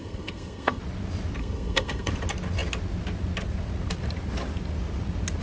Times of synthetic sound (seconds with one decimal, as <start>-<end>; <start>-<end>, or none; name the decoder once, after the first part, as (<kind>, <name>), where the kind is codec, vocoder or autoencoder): 0.0-0.8 (codec, SNAC); 1.4-2.1